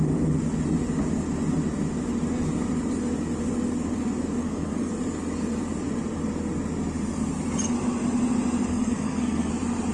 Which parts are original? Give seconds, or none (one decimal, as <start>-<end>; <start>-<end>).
0.0-4.4; 4.9-8.7; 9.5-9.9